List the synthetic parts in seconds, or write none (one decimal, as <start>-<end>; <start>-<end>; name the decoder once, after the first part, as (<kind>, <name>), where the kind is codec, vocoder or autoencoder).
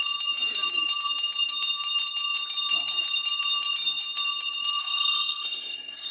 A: 4.8-6.1 (codec, SNAC)